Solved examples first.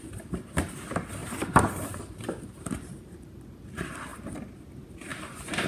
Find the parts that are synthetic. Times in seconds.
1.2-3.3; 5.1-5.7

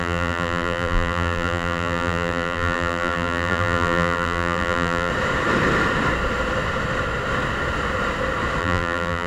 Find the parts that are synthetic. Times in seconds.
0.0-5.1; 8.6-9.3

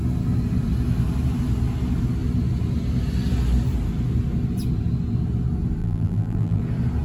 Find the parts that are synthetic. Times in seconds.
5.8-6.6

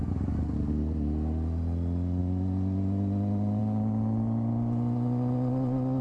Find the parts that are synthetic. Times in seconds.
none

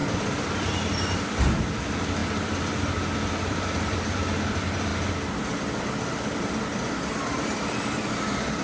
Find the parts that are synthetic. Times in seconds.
0.0-4.9; 6.0-8.6